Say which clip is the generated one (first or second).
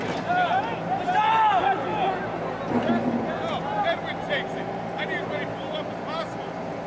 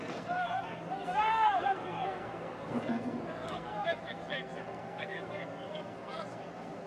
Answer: second